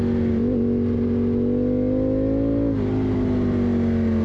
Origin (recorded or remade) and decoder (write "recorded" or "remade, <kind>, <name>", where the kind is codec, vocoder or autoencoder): recorded